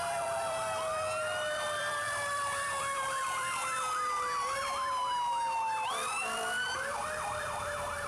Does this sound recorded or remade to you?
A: remade